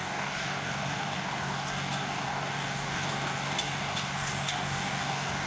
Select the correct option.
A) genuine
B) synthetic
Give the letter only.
B